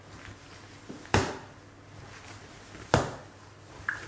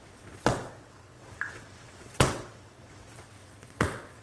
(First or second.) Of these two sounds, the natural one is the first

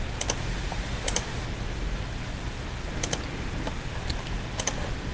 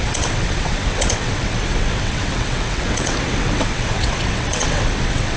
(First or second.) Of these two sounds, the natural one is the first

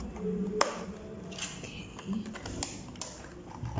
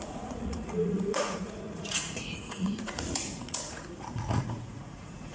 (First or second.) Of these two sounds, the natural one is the first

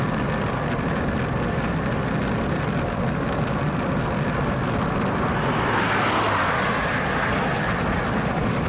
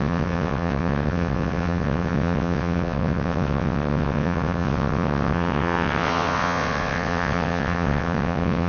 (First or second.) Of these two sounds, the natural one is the first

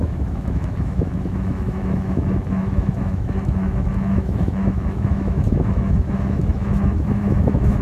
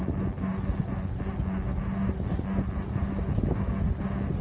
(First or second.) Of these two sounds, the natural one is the second